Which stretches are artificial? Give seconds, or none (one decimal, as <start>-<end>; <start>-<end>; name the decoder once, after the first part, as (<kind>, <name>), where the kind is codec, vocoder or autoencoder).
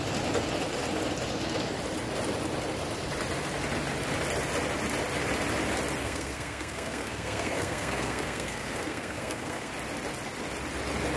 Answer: 6.0-9.7 (codec, SNAC)